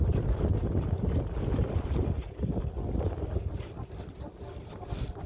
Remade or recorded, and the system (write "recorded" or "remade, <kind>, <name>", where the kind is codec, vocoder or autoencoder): recorded